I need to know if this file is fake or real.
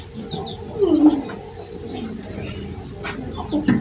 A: real